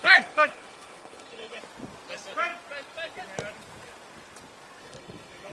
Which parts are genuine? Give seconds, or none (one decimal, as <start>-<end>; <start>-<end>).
1.6-4.8

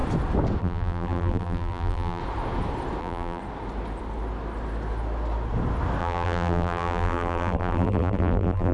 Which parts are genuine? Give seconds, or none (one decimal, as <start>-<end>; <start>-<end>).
0.0-0.6; 2.2-3.0; 3.4-6.0